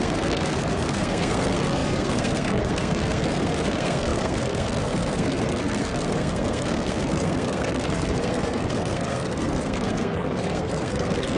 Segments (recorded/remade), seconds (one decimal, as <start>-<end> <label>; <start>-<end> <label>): 0.0-11.4 remade